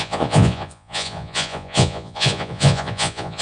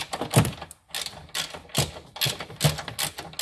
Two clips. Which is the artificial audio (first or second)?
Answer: first